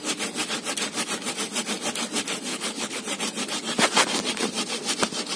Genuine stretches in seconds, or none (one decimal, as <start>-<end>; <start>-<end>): 0.0-2.5; 3.0-5.4